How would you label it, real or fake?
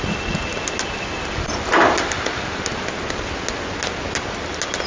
real